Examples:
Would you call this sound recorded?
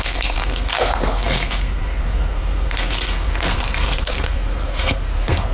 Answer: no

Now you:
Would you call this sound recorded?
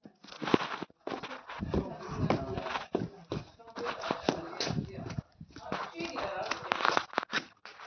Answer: yes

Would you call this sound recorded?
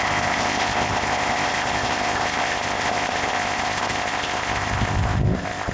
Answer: no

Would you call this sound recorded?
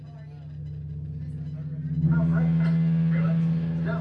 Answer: yes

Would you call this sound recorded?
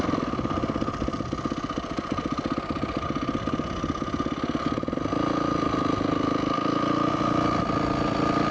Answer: yes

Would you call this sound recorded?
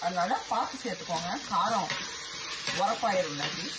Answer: yes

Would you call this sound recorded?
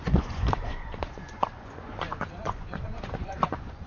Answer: no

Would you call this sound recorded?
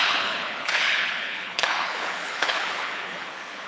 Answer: no